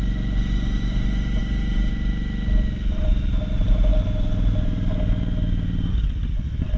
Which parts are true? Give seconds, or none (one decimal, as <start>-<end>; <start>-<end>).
0.0-6.8